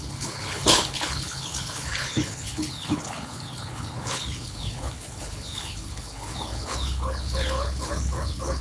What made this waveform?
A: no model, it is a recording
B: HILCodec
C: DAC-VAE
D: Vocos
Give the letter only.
B